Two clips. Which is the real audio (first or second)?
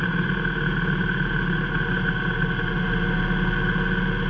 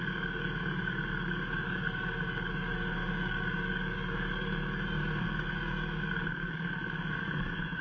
first